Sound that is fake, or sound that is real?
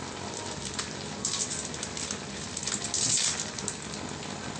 real